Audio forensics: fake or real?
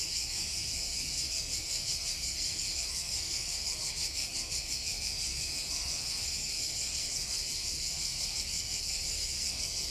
fake